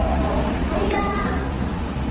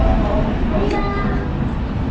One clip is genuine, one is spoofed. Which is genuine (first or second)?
second